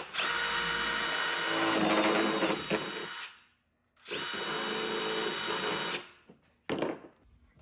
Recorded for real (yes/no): yes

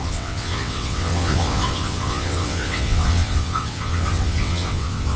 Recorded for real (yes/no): no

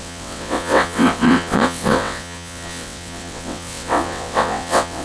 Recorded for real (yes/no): no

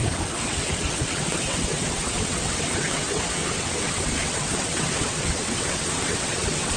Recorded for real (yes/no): no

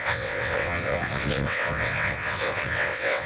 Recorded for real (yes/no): no